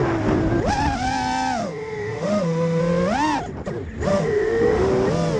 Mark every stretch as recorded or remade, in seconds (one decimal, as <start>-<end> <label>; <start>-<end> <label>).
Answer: 0.0-1.6 recorded; 1.6-2.8 remade; 2.8-4.1 recorded; 4.1-4.9 remade; 4.9-5.4 recorded